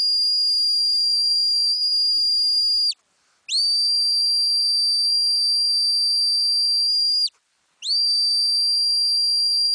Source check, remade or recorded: recorded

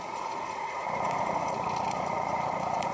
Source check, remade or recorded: remade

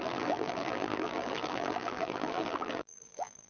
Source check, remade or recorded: remade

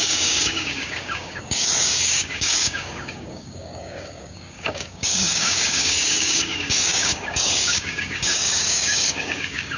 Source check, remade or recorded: remade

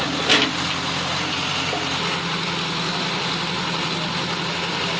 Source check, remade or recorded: recorded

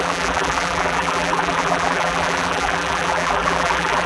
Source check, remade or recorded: remade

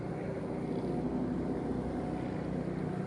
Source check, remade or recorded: recorded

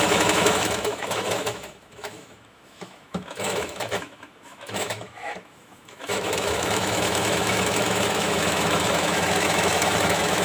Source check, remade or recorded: remade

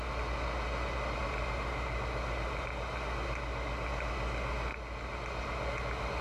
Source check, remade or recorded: recorded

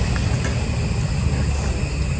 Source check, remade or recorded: recorded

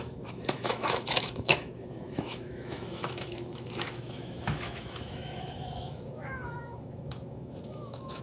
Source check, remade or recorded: remade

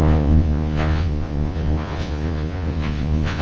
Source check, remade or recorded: remade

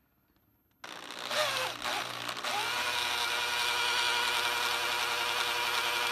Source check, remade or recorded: recorded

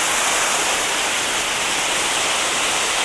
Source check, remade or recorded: recorded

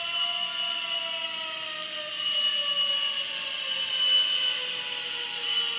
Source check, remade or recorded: recorded